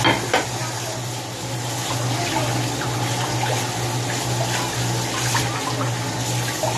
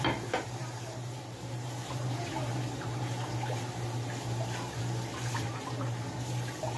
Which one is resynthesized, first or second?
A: second